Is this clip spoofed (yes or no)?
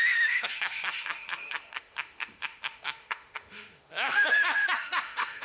yes